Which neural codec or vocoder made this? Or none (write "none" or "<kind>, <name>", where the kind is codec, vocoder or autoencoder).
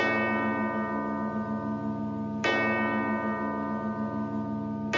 none